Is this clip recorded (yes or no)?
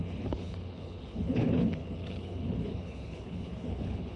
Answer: no